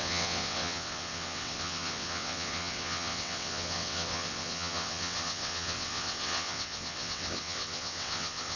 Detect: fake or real fake